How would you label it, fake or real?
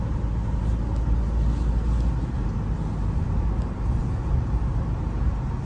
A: real